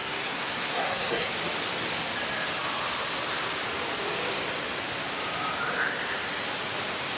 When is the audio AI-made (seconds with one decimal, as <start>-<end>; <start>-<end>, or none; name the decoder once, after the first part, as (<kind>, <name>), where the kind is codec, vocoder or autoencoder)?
0.0-1.3 (codec, SNAC)